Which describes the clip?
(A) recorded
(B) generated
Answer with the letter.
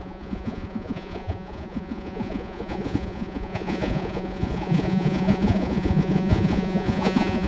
B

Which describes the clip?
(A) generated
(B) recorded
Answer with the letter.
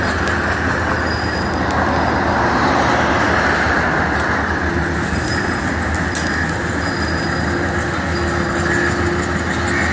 B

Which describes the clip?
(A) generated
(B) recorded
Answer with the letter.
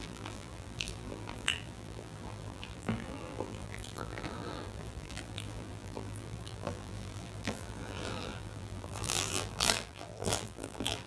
A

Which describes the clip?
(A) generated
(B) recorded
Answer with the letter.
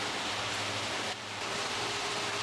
A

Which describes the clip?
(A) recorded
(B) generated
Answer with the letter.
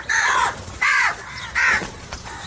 B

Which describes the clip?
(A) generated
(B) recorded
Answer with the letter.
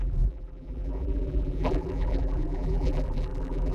A